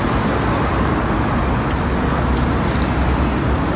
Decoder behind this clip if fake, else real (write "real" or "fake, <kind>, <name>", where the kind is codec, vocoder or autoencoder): real